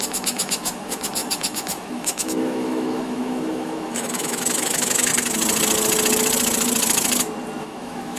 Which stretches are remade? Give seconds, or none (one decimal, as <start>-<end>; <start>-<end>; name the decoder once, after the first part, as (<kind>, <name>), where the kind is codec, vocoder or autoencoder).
0.0-5.1 (autoencoder, DAC-VAE); 7.6-8.2